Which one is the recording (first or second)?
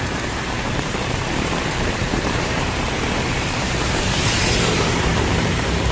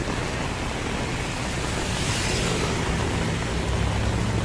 second